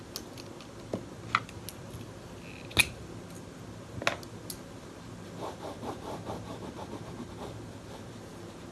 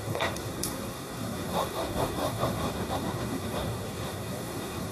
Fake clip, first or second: second